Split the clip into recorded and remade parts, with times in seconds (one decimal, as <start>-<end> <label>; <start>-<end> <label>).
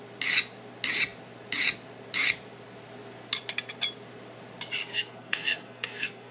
0.0-4.8 recorded; 4.8-6.3 remade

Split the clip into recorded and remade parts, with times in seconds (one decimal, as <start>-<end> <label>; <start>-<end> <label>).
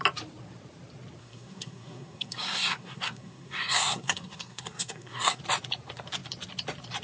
0.0-1.2 recorded; 1.2-5.4 remade; 5.4-7.0 recorded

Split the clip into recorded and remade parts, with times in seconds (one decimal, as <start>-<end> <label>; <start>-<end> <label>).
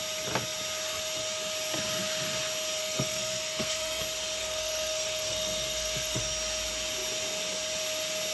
0.0-2.8 recorded; 2.8-4.0 remade; 4.0-4.4 recorded; 4.4-6.2 remade; 6.2-8.3 recorded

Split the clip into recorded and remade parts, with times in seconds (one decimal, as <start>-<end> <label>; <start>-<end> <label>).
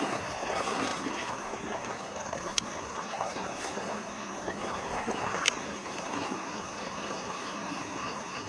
0.0-8.5 remade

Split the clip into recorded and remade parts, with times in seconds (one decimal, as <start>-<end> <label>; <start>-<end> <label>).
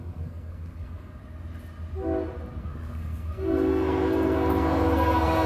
0.0-1.2 remade; 1.2-2.6 recorded; 2.6-5.5 remade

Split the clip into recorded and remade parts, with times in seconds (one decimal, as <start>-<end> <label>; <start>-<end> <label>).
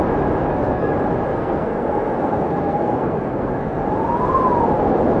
0.0-0.4 recorded; 0.4-0.9 remade; 0.9-1.3 recorded; 1.3-3.8 remade; 3.8-5.2 recorded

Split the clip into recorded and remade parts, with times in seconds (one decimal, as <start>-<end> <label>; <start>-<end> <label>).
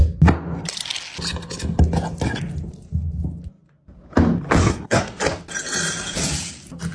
0.0-4.6 recorded; 4.6-5.2 remade; 5.2-6.9 recorded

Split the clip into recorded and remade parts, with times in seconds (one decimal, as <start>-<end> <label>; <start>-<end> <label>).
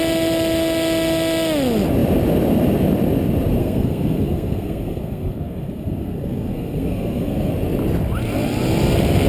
0.0-3.6 recorded; 3.6-7.5 remade; 7.5-9.3 recorded